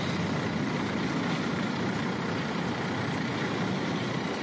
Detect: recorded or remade recorded